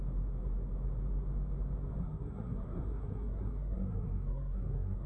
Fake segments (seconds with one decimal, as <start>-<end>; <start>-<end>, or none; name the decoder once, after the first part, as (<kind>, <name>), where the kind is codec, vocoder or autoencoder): 2.0-5.1 (codec, SNAC)